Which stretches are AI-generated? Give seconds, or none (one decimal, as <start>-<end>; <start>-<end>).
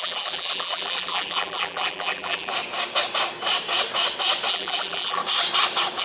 0.0-2.5; 4.5-5.2